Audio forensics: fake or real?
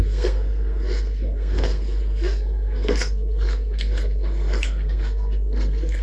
fake